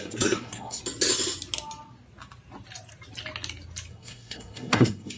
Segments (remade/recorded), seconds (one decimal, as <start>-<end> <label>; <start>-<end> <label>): 0.0-0.8 remade; 0.8-3.9 recorded; 3.9-5.2 remade